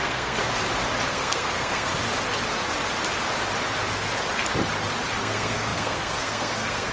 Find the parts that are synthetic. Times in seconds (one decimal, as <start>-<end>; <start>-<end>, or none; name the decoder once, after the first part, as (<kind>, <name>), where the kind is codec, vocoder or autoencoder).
0.0-0.4 (codec, SNAC); 1.1-1.9; 5.2-6.9